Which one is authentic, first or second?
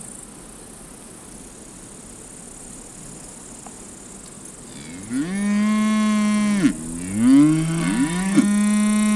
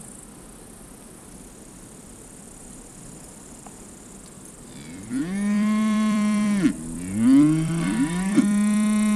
first